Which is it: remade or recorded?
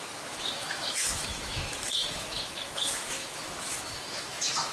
remade